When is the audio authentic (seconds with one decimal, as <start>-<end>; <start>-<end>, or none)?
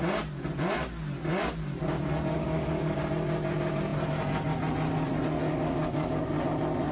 0.0-2.4; 3.0-5.4; 6.3-6.9